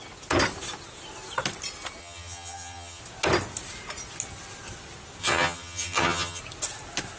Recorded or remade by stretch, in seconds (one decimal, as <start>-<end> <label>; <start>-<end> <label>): 0.0-2.0 recorded; 2.0-3.0 remade; 3.0-5.2 recorded; 5.2-6.4 remade; 6.4-7.2 recorded